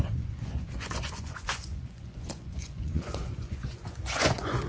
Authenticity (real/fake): fake